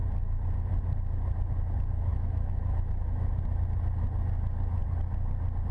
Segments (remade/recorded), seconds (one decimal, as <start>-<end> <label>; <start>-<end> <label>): 0.0-2.1 recorded; 2.1-3.4 remade; 3.4-5.7 recorded